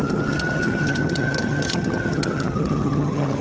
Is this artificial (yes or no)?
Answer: yes